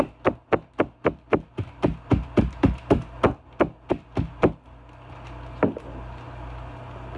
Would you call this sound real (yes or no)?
yes